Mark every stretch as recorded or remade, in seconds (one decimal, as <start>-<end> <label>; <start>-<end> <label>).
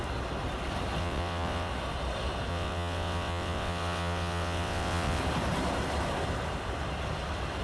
0.0-1.0 recorded; 1.0-1.7 remade; 1.7-2.5 recorded; 2.5-5.2 remade; 5.2-7.6 recorded